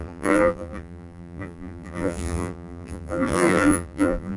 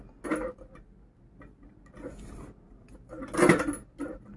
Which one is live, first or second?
second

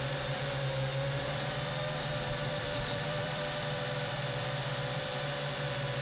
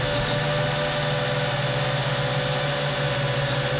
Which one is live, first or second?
second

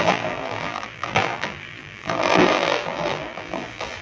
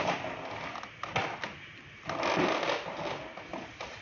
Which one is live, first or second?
second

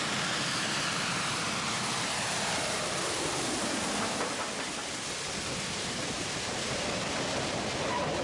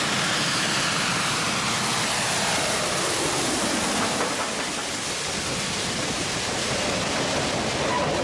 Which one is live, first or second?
second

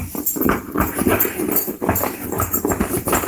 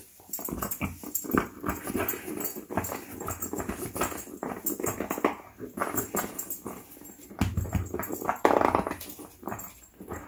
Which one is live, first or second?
second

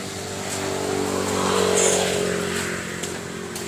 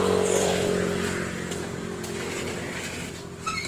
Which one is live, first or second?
first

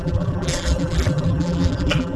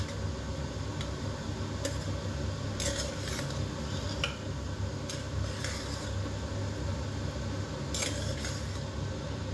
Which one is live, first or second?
second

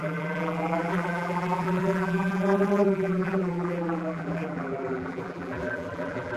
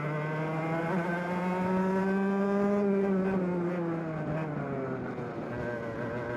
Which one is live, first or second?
second